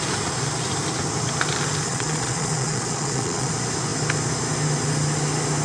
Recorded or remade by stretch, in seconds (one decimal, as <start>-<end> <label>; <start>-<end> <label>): 0.0-1.9 recorded; 1.9-3.5 remade; 3.5-5.6 recorded